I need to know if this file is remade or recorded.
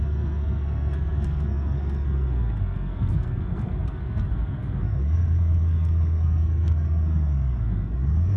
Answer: remade